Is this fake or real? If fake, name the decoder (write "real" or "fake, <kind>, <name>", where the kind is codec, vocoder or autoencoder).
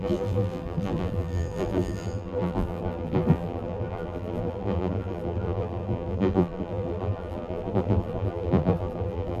fake, vocoder, BigVGAN v2